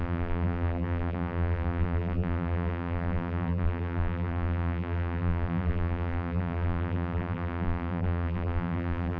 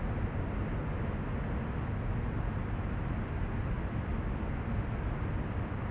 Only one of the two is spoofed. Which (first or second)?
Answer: first